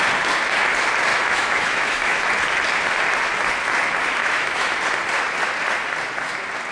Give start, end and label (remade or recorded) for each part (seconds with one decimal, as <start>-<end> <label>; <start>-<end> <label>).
0.0-1.1 recorded; 1.1-2.2 remade; 2.2-4.2 recorded; 4.2-4.8 remade; 4.8-6.7 recorded